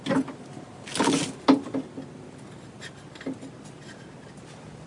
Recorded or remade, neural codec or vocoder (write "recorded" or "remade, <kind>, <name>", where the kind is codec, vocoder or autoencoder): recorded